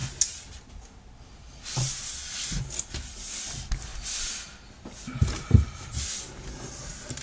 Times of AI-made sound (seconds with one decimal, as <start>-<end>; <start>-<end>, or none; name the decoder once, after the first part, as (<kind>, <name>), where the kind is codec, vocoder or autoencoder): 3.9-6.3 (vocoder, BigVGAN v2)